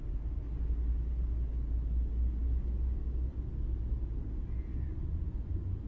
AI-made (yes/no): no